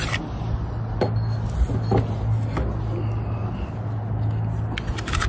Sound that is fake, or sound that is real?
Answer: real